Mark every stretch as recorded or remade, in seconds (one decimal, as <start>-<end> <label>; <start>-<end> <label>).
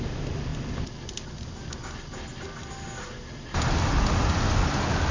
0.0-5.1 recorded